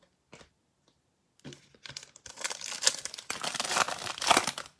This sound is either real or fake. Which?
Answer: real